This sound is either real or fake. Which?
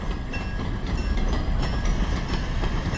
fake